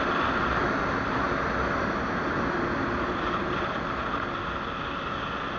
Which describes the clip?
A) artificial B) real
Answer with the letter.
B